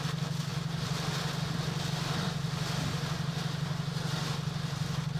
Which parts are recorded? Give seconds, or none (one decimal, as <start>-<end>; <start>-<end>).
0.0-5.2

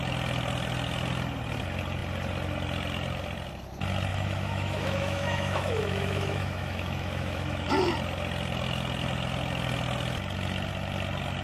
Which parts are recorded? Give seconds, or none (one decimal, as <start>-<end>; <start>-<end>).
0.0-4.1; 7.7-11.4

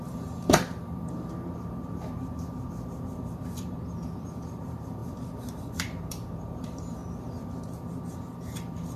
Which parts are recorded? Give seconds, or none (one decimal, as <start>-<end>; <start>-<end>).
none

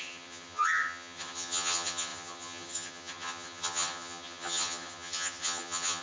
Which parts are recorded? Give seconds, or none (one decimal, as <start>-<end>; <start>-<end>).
none